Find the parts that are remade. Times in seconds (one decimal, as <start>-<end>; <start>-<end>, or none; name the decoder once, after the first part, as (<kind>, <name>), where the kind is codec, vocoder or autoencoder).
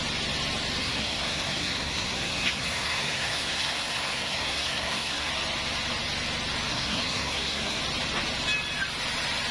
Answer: 0.8-5.3 (codec, SNAC); 6.7-7.8